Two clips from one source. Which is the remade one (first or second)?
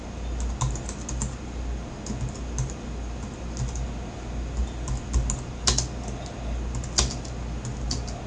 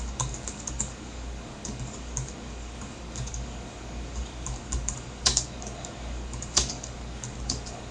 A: second